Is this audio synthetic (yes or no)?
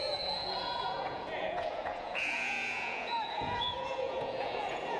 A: yes